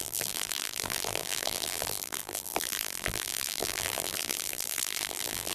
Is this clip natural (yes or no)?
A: no